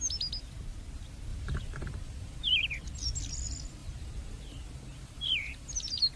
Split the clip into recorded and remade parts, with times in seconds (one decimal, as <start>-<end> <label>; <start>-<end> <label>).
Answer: 0.0-1.3 recorded; 1.3-2.6 remade; 2.6-3.8 recorded; 3.8-5.7 remade; 5.7-6.2 recorded